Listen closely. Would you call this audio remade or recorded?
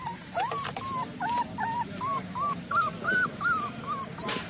remade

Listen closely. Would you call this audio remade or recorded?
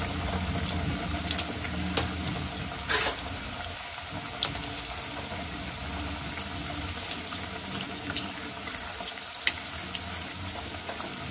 recorded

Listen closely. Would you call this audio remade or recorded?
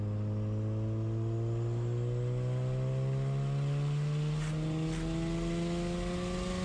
recorded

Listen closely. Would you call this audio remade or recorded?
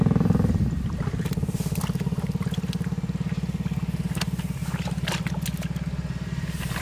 recorded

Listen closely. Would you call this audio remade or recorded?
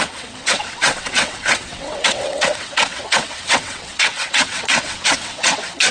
remade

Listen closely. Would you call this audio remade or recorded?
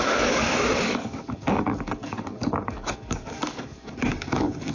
remade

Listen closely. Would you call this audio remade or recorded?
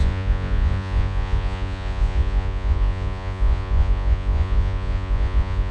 remade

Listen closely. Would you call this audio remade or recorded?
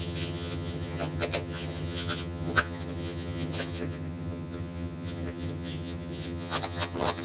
remade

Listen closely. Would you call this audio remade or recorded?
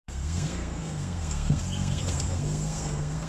remade